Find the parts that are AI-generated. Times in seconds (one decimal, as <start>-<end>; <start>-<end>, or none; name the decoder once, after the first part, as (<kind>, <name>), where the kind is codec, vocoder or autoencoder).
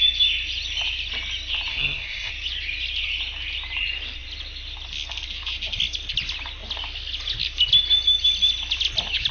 1.7-2.3 (codec, SNAC)